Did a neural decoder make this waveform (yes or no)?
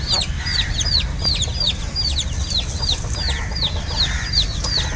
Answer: no